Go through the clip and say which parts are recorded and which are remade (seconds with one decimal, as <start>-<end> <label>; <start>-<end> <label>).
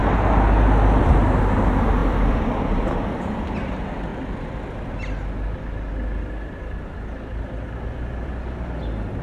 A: 0.0-2.0 recorded; 2.0-3.4 remade; 3.4-4.1 recorded; 4.1-4.9 remade; 4.9-9.2 recorded